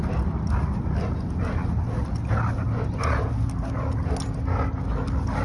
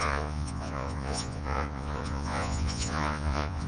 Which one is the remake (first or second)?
second